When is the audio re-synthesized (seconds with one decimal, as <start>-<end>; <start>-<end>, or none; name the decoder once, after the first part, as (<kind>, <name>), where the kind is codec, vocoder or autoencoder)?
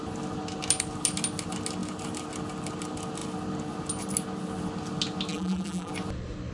5.3-5.9 (vocoder, BigVGAN v2)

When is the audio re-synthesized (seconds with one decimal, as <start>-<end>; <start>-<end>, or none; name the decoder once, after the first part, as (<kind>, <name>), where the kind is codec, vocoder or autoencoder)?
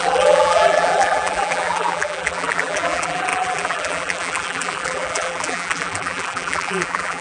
0.0-7.2 (vocoder, BigVGAN v2)